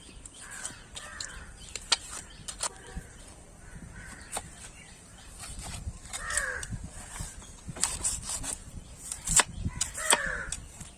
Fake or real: fake